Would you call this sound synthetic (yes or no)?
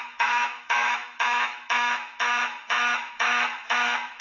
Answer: yes